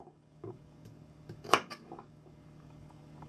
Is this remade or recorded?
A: remade